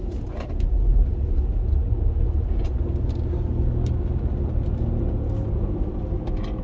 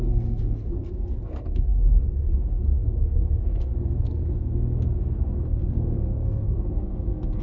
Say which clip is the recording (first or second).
first